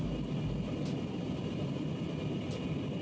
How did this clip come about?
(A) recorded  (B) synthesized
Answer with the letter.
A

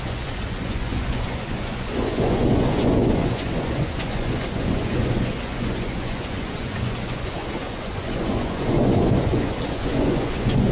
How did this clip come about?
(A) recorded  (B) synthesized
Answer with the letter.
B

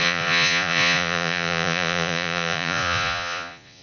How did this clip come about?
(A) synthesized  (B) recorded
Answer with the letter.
A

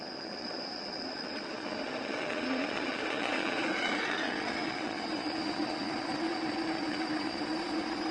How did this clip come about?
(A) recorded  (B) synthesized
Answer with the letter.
B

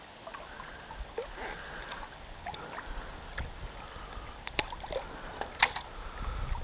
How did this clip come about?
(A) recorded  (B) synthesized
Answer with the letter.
A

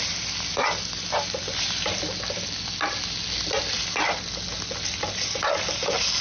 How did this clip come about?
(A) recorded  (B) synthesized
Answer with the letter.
A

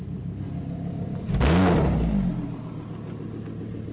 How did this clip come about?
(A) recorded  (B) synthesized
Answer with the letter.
A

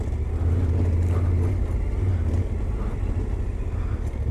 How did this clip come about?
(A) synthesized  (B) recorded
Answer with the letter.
B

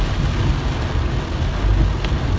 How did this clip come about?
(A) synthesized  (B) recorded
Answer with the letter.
B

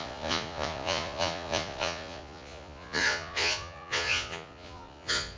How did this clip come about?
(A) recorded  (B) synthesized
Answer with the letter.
B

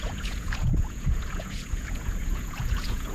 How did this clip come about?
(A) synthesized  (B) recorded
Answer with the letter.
A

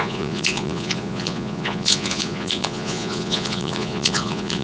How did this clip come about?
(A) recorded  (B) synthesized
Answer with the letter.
B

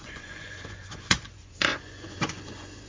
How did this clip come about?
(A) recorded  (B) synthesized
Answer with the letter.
B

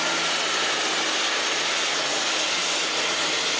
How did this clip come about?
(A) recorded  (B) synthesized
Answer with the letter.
A